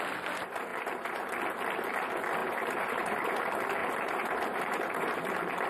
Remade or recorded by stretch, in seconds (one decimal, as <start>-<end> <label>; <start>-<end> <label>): 0.0-0.7 recorded; 0.7-1.3 remade; 1.3-2.4 recorded; 2.4-3.3 remade; 3.3-3.8 recorded; 3.8-5.2 remade; 5.2-5.7 recorded